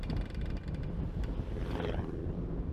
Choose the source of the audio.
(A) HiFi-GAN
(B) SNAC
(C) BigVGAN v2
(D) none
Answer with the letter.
D